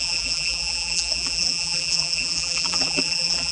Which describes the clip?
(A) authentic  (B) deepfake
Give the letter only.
B